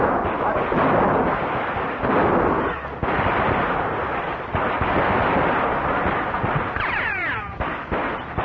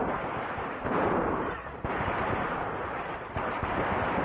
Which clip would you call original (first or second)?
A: first